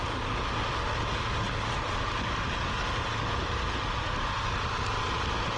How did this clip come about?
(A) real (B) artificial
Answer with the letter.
A